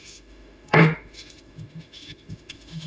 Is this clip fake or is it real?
fake